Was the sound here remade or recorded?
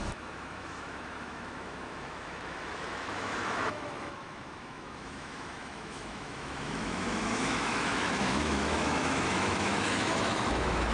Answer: remade